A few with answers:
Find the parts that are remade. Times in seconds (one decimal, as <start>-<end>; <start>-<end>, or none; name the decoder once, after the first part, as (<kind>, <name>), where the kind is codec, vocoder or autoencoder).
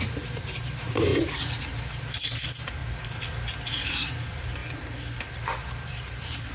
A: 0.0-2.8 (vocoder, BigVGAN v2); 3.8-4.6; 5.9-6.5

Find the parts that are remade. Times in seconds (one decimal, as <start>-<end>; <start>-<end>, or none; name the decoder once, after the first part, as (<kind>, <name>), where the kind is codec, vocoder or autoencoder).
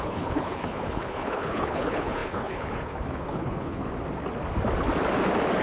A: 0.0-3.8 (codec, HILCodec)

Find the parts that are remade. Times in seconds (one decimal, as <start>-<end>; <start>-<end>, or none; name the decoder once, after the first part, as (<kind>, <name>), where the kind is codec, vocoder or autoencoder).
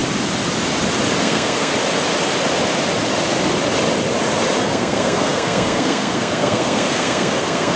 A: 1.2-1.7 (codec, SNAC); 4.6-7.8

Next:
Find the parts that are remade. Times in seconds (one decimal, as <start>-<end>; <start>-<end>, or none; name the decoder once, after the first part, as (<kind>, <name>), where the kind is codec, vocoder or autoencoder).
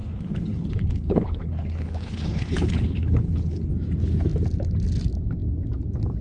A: 0.0-3.7 (codec, HILCodec)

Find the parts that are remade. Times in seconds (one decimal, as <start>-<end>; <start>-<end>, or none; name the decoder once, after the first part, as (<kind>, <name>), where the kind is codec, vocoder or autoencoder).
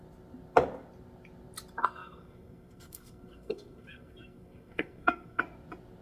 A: 1.8-5.4 (codec, SNAC)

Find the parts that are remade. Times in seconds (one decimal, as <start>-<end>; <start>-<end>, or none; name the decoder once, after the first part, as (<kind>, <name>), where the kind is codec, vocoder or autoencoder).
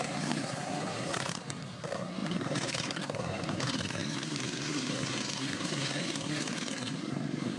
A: 0.0-7.6 (codec, SNAC)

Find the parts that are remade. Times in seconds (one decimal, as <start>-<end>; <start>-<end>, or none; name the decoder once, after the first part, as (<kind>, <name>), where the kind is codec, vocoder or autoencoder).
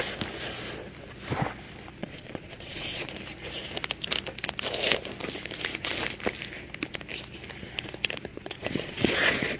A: 2.0-3.1 (vocoder, Vocos); 8.3-9.6